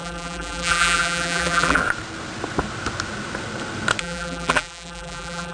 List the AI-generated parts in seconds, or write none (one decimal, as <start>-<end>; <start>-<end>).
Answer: 0.0-1.8; 4.0-5.5